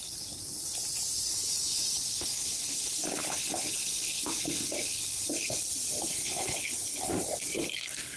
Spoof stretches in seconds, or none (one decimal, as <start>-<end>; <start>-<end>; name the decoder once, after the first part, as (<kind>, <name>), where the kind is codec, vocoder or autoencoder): 1.3-5.6 (codec, HILCodec); 6.2-7.1